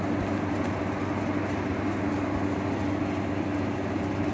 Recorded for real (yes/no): yes